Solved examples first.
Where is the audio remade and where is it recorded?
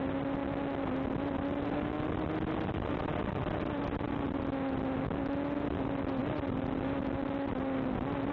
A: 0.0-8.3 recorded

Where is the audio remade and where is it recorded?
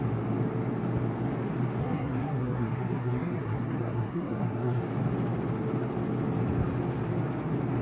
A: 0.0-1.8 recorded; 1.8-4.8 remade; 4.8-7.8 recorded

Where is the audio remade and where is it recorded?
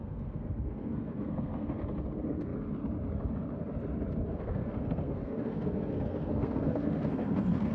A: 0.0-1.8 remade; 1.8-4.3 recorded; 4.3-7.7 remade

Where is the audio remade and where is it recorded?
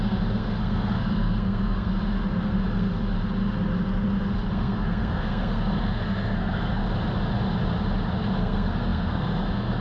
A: 0.0-1.9 remade; 1.9-2.4 recorded; 2.4-2.9 remade; 2.9-4.5 recorded; 4.5-6.8 remade; 6.8-8.4 recorded; 8.4-9.8 remade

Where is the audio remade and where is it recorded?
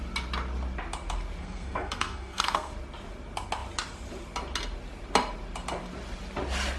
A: 0.0-1.4 recorded; 1.4-2.7 remade; 2.7-6.8 recorded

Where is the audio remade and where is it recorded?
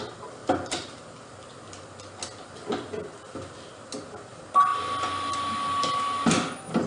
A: 0.0-6.9 recorded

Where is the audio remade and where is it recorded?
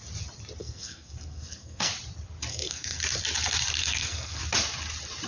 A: 0.0-0.6 recorded; 0.6-1.9 remade; 1.9-2.5 recorded; 2.5-3.0 remade; 3.0-3.8 recorded; 3.8-4.4 remade; 4.4-5.3 recorded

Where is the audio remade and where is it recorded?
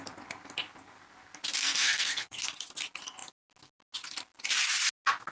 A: 0.0-1.6 recorded; 1.6-2.4 remade; 2.4-5.3 recorded